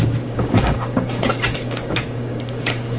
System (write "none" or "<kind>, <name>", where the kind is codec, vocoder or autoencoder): codec, DAC